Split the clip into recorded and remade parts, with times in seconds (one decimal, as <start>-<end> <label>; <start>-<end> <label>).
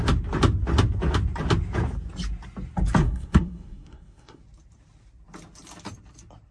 0.0-3.0 recorded; 3.0-4.4 remade; 4.4-6.5 recorded